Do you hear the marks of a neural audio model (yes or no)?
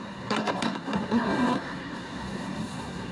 yes